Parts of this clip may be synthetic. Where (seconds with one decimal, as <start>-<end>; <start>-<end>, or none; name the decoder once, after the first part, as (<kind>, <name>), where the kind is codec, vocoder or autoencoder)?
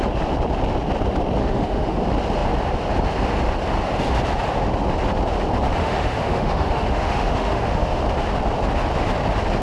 1.4-2.0 (autoencoder, DAC-VAE); 5.8-8.0